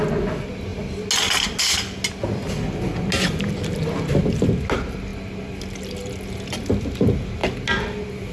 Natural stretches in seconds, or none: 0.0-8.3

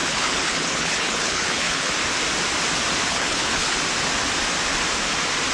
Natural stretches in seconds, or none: 1.9-3.1; 3.8-5.5

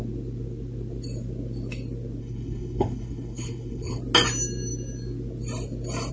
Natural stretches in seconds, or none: 0.0-2.2; 4.0-6.1

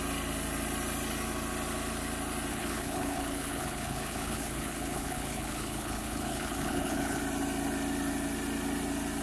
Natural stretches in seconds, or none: 0.0-2.5; 7.2-9.2

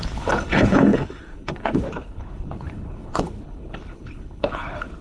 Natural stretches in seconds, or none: none

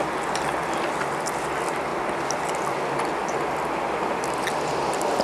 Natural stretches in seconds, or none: 0.0-5.2

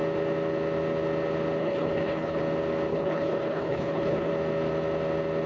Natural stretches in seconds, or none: 0.0-1.6; 2.4-2.9; 4.3-5.5